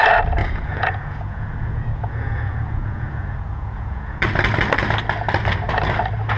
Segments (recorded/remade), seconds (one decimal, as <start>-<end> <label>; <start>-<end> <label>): 0.0-0.4 recorded; 0.4-4.2 remade; 4.2-6.4 recorded